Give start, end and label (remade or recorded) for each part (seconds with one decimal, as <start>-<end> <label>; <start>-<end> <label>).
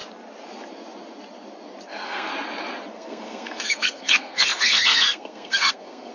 0.0-1.9 recorded; 1.9-2.3 remade; 2.3-2.9 recorded; 2.9-6.1 remade